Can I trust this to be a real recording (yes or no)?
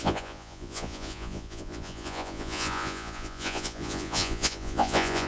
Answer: no